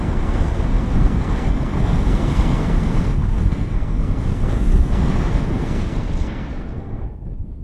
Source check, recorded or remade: remade